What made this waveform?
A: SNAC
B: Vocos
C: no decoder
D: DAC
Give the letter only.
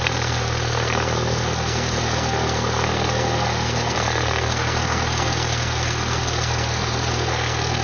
A